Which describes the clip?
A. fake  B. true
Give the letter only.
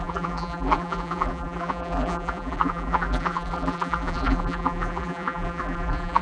A